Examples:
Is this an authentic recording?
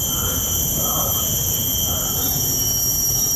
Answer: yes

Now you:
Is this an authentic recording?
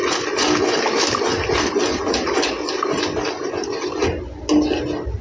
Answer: yes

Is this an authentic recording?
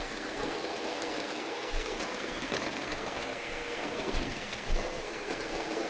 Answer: no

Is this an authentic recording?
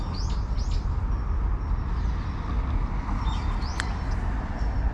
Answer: yes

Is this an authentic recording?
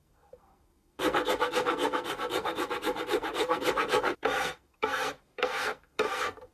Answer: no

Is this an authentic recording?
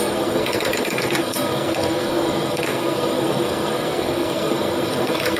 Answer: no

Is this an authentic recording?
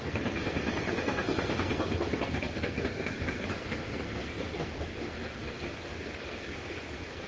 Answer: no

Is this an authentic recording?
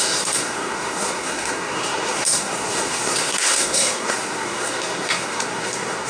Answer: no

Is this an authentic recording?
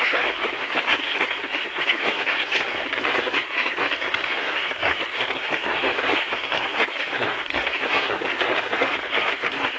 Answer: no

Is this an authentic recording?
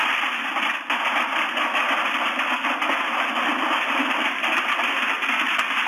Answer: yes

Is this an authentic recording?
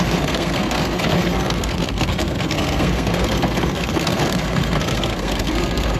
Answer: no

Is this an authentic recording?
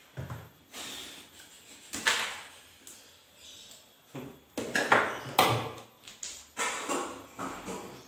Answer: yes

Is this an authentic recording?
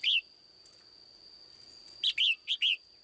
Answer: yes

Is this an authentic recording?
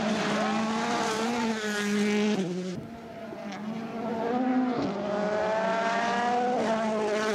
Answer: yes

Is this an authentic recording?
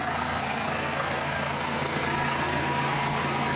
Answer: no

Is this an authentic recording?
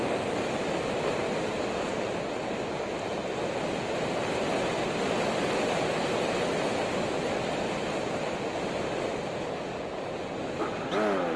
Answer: yes